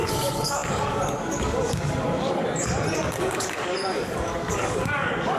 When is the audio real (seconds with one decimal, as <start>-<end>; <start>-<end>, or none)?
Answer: 2.4-3.1